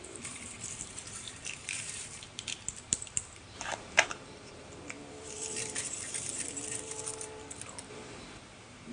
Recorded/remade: remade